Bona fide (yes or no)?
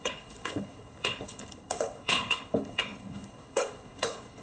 no